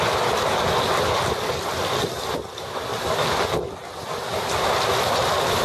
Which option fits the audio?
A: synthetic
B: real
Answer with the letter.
A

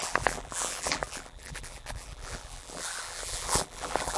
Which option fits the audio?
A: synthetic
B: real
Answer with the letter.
A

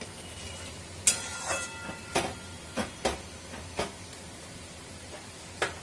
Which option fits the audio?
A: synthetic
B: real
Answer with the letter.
B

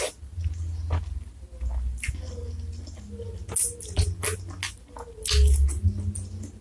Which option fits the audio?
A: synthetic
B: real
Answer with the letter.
B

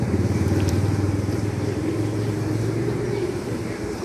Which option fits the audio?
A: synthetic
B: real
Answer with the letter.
A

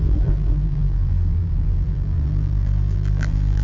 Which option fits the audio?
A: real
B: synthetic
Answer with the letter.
B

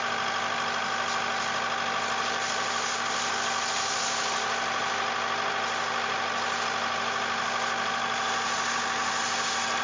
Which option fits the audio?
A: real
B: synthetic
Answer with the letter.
A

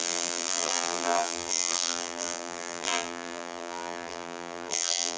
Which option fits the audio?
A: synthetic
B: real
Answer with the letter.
A